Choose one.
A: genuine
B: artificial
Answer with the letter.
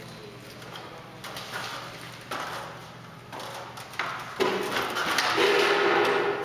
A